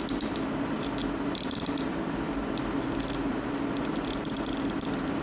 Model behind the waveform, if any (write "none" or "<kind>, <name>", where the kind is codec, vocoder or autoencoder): none